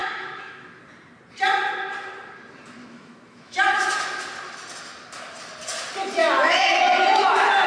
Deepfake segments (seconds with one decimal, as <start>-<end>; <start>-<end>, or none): 0.0-0.8; 2.8-3.9; 6.2-7.3